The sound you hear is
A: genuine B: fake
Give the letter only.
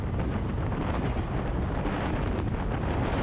A